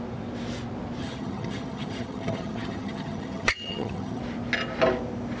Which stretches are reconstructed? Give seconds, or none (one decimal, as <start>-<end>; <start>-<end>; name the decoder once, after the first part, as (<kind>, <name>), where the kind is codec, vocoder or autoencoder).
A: 1.0-4.2 (vocoder, HiFi-GAN)